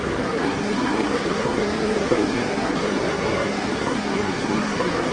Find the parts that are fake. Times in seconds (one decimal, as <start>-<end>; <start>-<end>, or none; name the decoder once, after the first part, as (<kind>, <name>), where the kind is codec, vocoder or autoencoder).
0.0-5.1 (codec, SNAC)